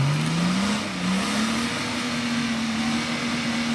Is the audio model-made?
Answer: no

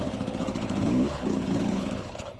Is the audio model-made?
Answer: yes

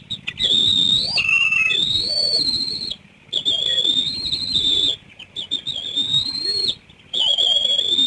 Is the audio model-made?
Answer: no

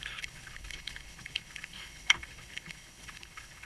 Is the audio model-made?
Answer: yes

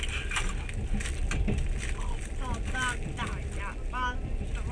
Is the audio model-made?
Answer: no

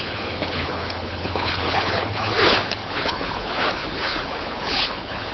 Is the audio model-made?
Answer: yes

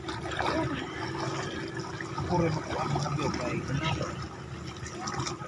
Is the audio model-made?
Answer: no